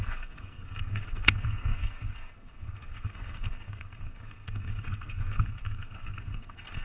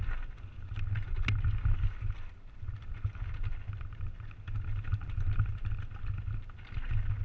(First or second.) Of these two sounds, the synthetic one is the first